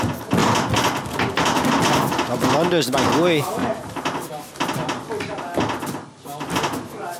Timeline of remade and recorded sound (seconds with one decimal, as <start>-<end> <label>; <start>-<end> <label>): 0.0-3.6 recorded; 3.6-4.3 remade; 4.3-7.2 recorded